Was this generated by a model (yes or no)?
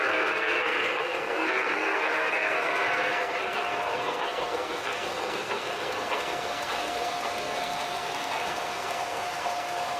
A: yes